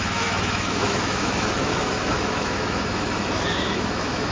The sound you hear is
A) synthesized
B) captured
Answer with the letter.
A